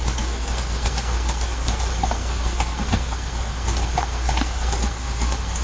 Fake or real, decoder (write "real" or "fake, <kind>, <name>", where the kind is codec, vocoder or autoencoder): fake, codec, SNAC